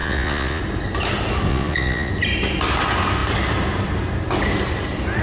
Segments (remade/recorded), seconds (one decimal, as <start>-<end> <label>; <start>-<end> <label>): 0.0-0.6 remade; 0.6-1.5 recorded; 1.5-2.1 remade; 2.1-5.2 recorded